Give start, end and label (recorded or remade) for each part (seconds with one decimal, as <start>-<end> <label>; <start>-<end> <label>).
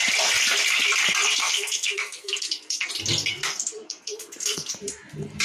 0.0-1.4 recorded; 1.4-2.9 remade; 2.9-3.3 recorded; 3.3-4.7 remade; 4.7-5.4 recorded